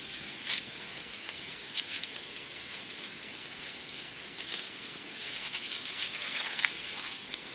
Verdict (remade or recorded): remade